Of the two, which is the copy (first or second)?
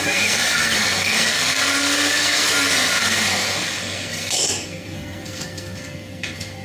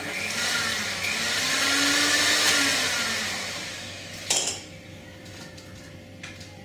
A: first